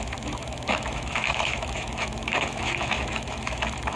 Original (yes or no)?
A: no